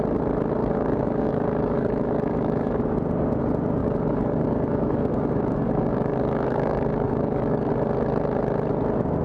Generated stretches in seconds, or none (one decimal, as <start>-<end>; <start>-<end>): 0.6-2.8; 3.8-7.7